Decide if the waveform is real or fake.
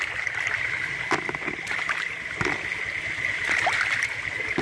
fake